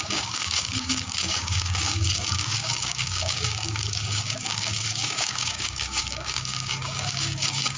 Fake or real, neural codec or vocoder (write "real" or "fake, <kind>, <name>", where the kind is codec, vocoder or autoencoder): fake, codec, DAC